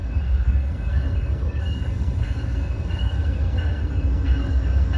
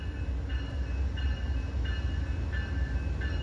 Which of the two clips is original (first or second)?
second